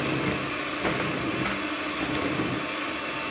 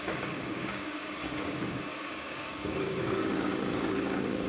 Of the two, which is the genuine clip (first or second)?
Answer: first